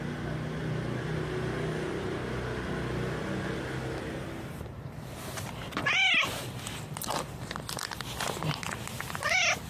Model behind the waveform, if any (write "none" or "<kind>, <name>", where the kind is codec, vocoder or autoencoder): none